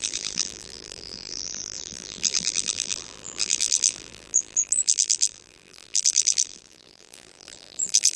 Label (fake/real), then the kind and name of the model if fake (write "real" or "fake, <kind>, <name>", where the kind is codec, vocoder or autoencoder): fake, vocoder, BigVGAN v2